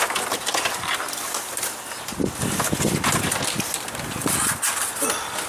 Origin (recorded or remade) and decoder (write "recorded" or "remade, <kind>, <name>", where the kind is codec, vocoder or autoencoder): remade, vocoder, BigVGAN v2